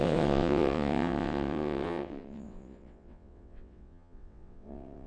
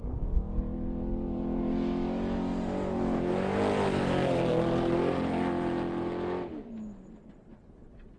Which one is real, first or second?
second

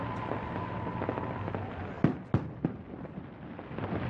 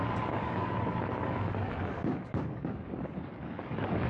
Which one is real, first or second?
first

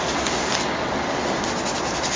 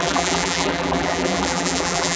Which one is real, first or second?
first